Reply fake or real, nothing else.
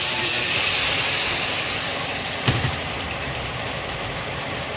real